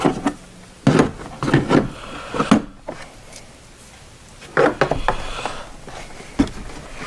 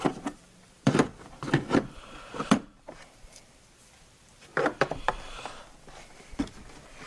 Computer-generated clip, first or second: second